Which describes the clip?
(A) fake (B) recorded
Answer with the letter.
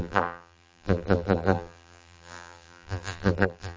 A